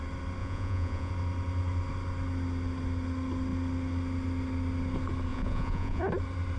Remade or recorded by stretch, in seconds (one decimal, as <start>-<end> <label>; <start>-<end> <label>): 0.0-0.4 recorded; 0.4-1.1 remade; 1.1-5.3 recorded; 5.3-6.0 remade; 6.0-6.6 recorded